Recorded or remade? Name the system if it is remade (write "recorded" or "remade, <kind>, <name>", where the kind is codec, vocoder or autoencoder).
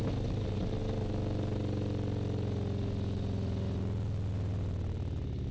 recorded